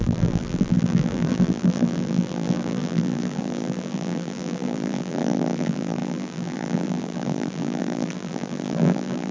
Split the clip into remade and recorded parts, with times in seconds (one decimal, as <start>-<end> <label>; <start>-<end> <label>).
0.0-9.3 remade